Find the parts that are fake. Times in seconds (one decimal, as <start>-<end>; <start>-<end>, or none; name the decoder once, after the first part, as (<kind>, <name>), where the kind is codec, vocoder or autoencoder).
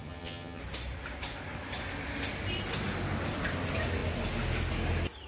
0.0-0.6 (vocoder, HiFi-GAN)